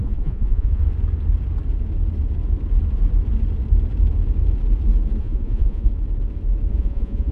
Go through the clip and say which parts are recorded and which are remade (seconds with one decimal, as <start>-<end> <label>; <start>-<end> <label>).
0.0-0.8 remade; 0.8-5.2 recorded; 5.2-5.9 remade; 5.9-6.7 recorded; 6.7-7.3 remade